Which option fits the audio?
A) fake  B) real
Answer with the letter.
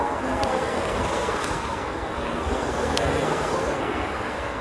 A